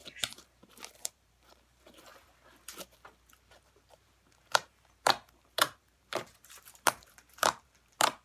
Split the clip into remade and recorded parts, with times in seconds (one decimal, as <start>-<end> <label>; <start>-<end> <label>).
0.0-2.1 remade; 2.1-3.3 recorded; 3.3-8.2 remade